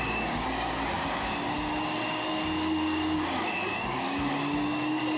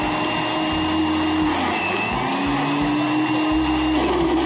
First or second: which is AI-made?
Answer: first